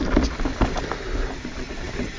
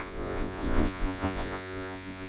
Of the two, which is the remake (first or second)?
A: second